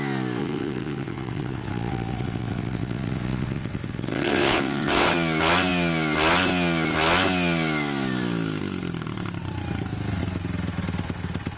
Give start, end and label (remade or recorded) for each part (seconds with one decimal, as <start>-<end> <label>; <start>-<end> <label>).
0.0-0.4 recorded; 0.4-5.1 remade; 5.1-11.6 recorded